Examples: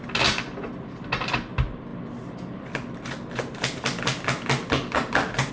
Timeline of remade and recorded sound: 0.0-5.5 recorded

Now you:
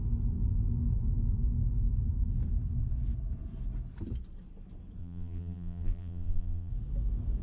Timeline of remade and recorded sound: 0.0-5.0 recorded; 5.0-6.7 remade; 6.7-7.4 recorded

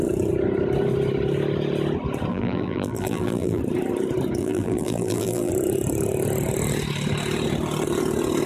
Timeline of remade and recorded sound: 0.0-2.3 recorded; 2.3-3.6 remade; 3.6-4.4 recorded; 4.4-5.5 remade; 5.5-8.5 recorded

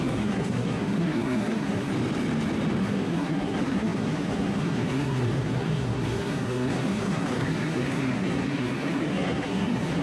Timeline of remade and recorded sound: 0.0-1.9 remade; 1.9-2.8 recorded; 2.8-10.0 remade

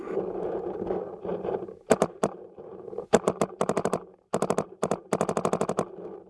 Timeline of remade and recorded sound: 0.0-1.3 recorded; 1.3-5.1 remade; 5.1-6.3 recorded

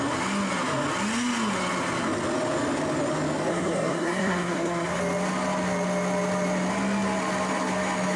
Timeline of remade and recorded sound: 0.0-3.5 recorded; 3.5-5.0 remade; 5.0-8.2 recorded